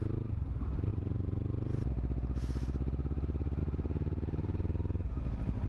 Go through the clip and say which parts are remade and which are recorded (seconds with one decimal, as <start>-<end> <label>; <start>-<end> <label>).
0.0-3.6 recorded; 3.6-5.2 remade; 5.2-5.7 recorded